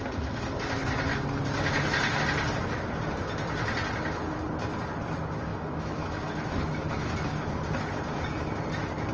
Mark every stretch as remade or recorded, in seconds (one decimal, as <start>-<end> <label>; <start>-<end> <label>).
0.0-5.5 recorded; 5.5-7.1 remade; 7.1-9.1 recorded